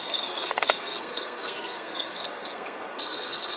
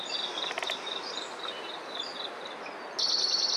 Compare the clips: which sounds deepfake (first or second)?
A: first